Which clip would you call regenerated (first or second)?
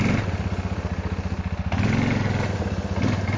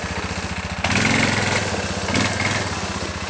first